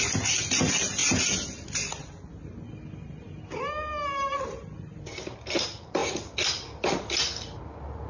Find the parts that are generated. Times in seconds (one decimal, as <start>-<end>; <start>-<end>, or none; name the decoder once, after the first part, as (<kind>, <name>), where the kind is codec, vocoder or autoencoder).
none